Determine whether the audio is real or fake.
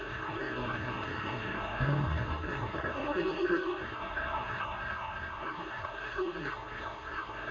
fake